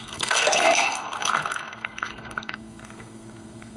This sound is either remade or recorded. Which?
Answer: remade